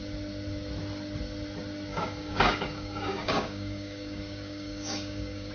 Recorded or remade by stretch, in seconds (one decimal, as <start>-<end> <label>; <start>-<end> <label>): 0.0-1.9 recorded; 1.9-5.5 remade